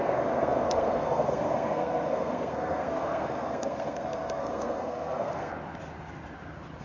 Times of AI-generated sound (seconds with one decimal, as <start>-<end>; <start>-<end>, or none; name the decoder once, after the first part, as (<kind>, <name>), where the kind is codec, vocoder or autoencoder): 0.0-5.5 (codec, SNAC)